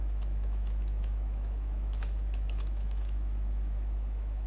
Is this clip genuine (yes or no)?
no